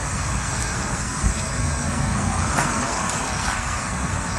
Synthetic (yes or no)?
yes